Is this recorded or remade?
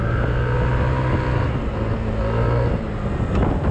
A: recorded